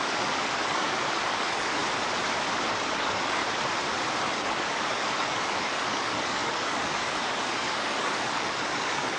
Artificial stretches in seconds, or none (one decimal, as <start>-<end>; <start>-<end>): 0.0-1.8; 2.8-3.4; 4.2-9.2